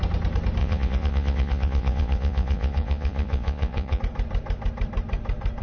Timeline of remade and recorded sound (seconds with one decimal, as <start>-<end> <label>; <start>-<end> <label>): 0.0-0.6 recorded; 0.6-4.0 remade; 4.0-5.6 recorded